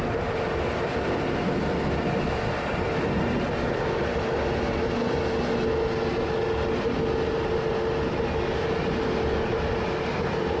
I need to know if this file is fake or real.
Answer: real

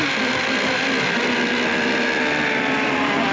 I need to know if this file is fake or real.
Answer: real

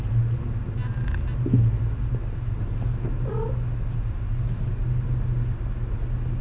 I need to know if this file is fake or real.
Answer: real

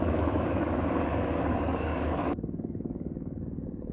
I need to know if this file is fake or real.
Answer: fake